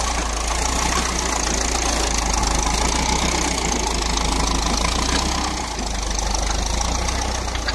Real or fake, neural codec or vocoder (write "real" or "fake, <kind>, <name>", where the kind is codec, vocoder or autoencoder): real